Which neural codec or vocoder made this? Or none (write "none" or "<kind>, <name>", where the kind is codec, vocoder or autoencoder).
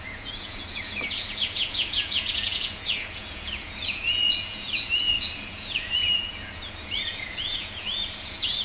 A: vocoder, Vocos